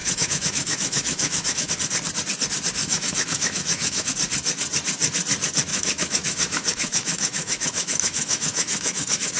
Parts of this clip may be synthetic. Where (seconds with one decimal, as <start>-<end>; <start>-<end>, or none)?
0.0-1.7; 2.8-4.1; 5.7-9.4